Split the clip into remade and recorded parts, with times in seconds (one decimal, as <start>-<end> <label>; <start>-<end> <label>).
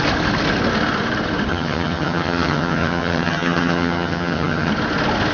0.0-1.5 recorded; 1.5-4.7 remade; 4.7-5.3 recorded